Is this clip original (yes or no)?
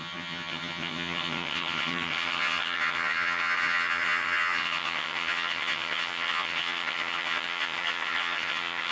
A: no